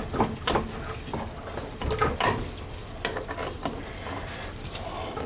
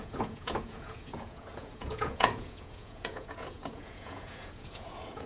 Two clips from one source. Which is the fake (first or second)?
second